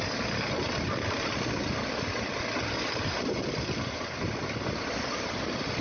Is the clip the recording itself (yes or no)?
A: yes